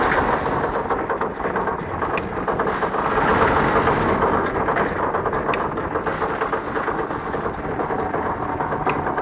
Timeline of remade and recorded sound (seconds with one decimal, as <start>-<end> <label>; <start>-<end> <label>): 0.0-9.2 recorded